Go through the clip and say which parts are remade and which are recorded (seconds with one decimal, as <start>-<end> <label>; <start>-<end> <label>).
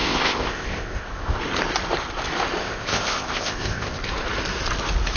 0.0-1.4 remade; 1.4-2.6 recorded; 2.6-4.0 remade; 4.0-5.2 recorded